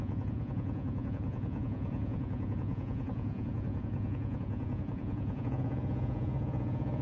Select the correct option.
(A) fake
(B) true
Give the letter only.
A